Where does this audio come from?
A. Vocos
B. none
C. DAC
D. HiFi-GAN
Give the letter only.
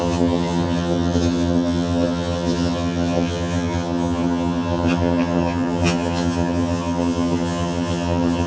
D